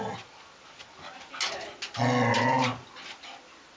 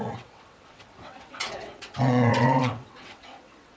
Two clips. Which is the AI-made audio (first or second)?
second